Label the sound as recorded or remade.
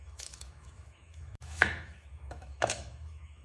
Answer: remade